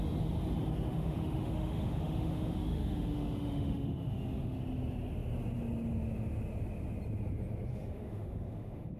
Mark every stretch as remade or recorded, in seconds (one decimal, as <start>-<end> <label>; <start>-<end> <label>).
0.0-0.9 recorded; 0.9-4.6 remade; 4.6-7.7 recorded; 7.7-9.0 remade